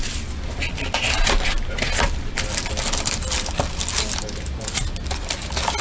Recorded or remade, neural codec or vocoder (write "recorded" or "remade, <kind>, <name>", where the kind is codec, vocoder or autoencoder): recorded